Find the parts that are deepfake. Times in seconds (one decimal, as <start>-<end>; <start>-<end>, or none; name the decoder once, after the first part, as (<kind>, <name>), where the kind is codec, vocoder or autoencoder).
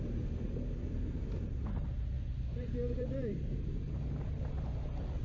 0.8-3.9 (vocoder, BigVGAN v2)